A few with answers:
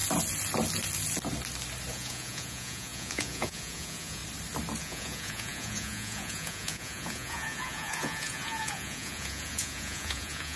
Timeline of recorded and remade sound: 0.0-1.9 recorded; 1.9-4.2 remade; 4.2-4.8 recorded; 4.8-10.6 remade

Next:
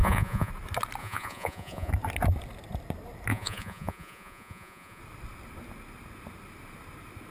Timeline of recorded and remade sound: 0.0-0.5 remade; 0.5-1.0 recorded; 1.0-1.9 remade; 1.9-3.3 recorded; 3.3-5.0 remade; 5.0-7.3 recorded

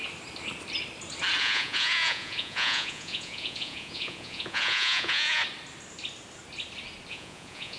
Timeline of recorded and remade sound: 0.0-1.4 recorded; 1.4-5.4 remade; 5.4-7.1 recorded; 7.1-7.8 remade